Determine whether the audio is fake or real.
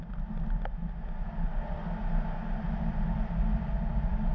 real